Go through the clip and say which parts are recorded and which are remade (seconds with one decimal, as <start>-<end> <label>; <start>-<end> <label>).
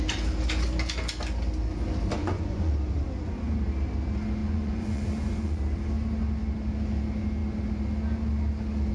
0.0-2.2 recorded; 2.2-2.7 remade; 2.7-4.4 recorded; 4.4-5.6 remade; 5.6-8.9 recorded